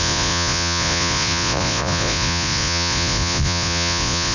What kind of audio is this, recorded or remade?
remade